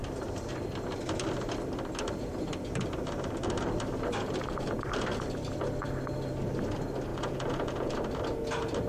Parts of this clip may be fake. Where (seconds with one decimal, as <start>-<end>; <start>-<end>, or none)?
7.1-7.9